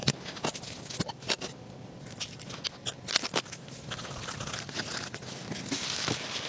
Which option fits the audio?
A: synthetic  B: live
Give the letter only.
B